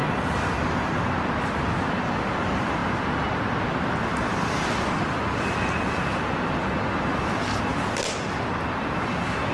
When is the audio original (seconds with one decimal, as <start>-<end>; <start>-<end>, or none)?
0.0-9.5